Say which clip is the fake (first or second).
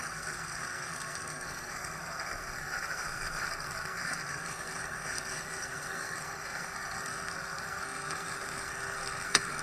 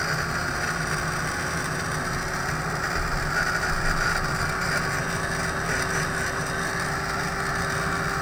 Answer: first